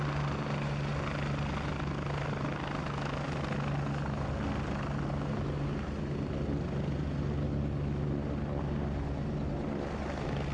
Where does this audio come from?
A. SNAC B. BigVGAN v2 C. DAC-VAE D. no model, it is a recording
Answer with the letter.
D